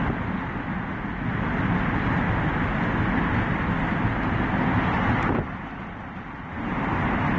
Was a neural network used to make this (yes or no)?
no